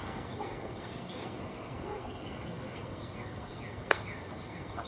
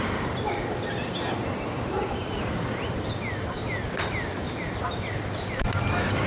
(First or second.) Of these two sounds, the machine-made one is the first